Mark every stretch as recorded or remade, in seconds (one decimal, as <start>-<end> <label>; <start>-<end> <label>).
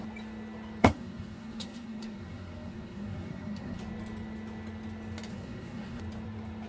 0.0-0.8 recorded; 0.8-3.8 remade; 3.8-5.3 recorded; 5.3-6.0 remade; 6.0-6.7 recorded